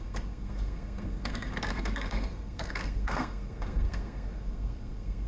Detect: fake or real fake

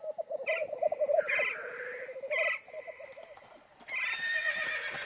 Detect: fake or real real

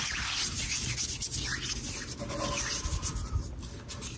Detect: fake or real real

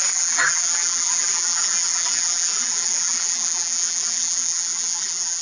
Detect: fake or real fake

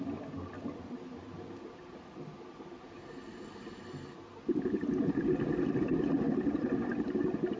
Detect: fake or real real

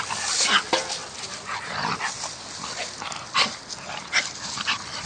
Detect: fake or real real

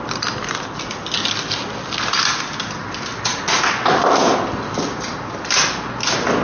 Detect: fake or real real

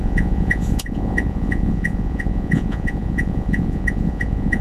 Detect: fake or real fake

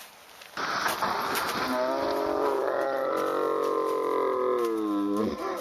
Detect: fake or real real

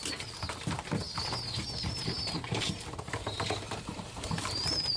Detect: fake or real fake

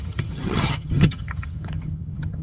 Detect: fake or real fake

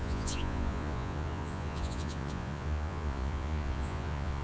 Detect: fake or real fake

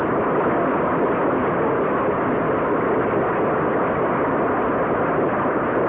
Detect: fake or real fake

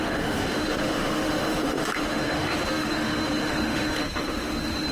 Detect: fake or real fake